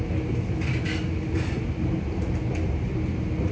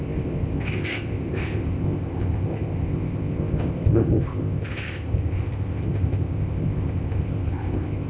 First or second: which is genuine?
first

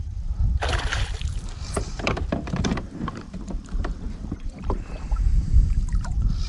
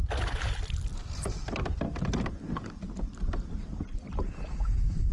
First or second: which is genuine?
second